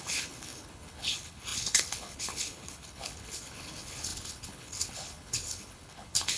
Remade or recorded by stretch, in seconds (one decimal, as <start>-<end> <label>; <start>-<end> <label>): 0.0-6.4 remade